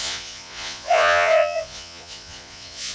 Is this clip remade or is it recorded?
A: remade